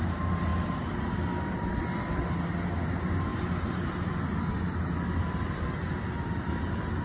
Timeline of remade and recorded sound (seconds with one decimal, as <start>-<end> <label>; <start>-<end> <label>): 0.0-7.0 recorded